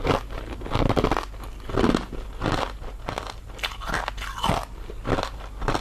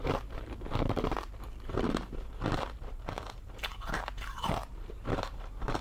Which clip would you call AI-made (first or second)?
second